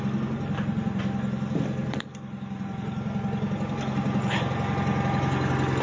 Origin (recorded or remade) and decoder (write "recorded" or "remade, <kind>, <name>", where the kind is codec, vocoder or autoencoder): recorded